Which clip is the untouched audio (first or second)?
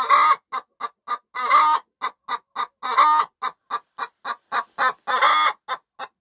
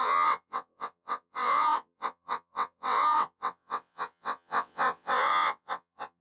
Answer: first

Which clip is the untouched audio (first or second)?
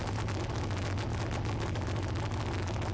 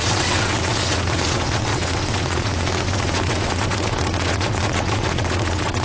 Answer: first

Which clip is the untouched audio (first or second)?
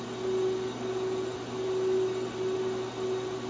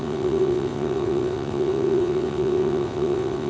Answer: first